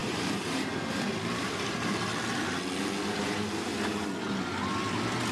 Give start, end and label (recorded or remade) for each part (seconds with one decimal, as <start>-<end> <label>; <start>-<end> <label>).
0.0-2.1 remade; 2.1-3.1 recorded; 3.1-3.7 remade; 3.7-5.3 recorded